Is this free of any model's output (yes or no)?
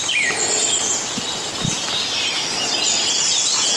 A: yes